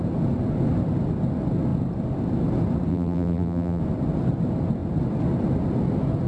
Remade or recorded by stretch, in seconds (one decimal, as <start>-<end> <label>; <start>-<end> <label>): 0.0-2.9 recorded; 2.9-3.8 remade; 3.8-6.3 recorded

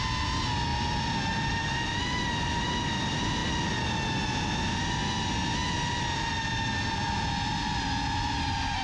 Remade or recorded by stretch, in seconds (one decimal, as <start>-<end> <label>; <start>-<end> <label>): 0.0-0.7 recorded; 0.7-2.0 remade; 2.0-8.8 recorded